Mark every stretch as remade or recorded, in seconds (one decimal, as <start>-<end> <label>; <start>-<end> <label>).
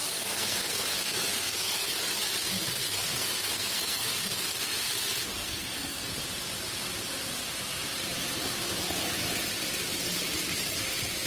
0.0-2.0 remade; 2.0-2.4 recorded; 2.4-4.9 remade; 4.9-5.4 recorded; 5.4-6.1 remade; 6.1-11.3 recorded